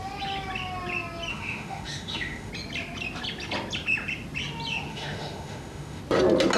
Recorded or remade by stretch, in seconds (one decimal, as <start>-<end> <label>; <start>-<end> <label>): 0.0-1.3 recorded; 1.3-2.5 remade; 2.5-4.9 recorded; 4.9-6.0 remade; 6.0-6.6 recorded